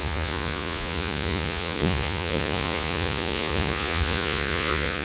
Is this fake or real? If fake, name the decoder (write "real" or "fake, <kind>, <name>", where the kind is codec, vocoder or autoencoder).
fake, vocoder, Vocos